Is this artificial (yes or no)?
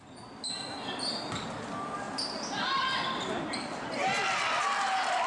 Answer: no